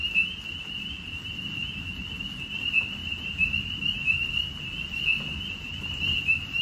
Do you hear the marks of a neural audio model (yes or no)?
no